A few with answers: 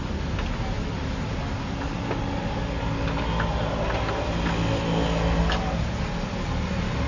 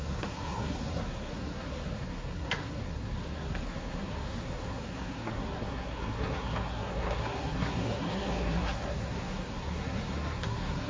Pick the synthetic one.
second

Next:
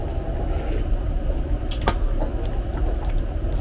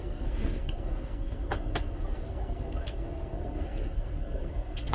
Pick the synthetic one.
second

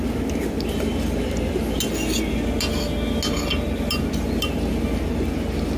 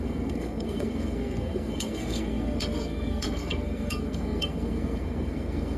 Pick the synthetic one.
second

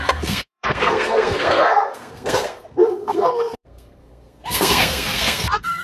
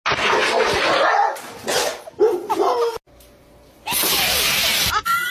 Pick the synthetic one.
first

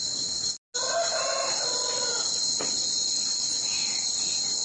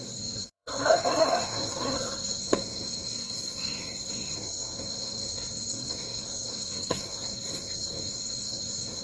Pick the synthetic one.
second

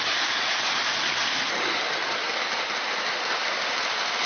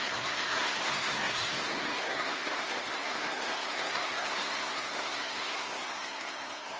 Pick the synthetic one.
second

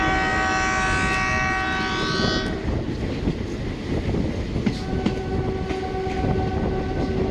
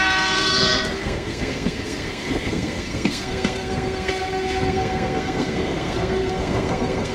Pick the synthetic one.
second